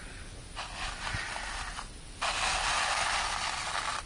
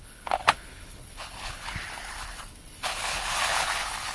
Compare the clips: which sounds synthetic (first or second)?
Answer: second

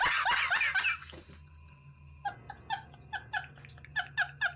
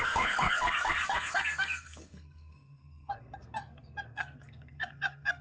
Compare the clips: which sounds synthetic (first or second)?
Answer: second